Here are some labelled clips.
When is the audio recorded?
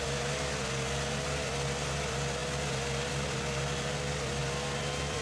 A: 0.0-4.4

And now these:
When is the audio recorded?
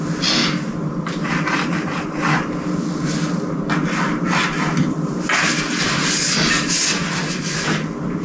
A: 0.0-8.2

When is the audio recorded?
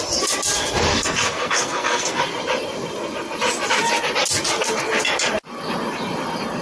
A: 0.0-0.9; 2.2-6.6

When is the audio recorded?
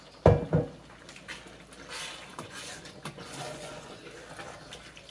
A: 0.0-2.3; 4.0-5.1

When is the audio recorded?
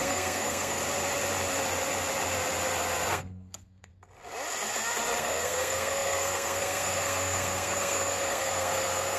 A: 0.8-3.1; 3.9-5.2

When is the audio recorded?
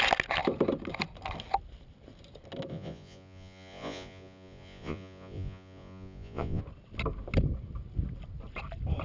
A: 0.0-2.7; 6.6-9.0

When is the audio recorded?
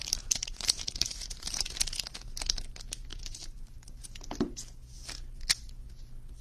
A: 1.6-3.1; 4.1-6.4